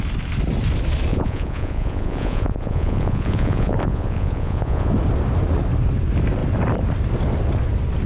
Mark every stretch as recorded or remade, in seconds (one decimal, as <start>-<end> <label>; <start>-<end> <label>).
0.0-1.1 recorded; 1.1-4.9 remade; 4.9-8.1 recorded